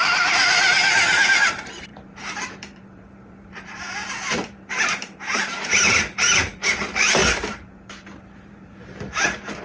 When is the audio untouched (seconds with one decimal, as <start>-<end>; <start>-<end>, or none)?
none